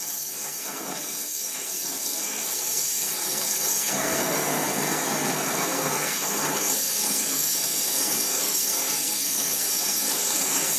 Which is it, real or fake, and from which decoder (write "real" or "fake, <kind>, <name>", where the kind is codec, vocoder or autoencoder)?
fake, codec, SNAC